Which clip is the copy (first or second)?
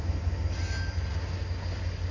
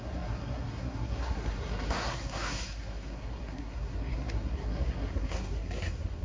second